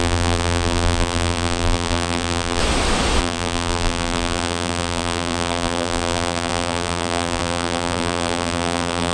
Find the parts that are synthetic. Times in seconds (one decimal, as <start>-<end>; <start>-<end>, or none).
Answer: 0.0-2.6; 3.2-9.1